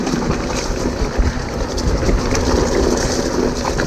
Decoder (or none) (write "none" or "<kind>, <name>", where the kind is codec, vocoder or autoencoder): none